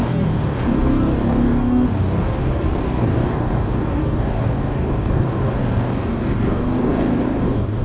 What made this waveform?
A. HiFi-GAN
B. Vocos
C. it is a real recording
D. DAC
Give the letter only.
D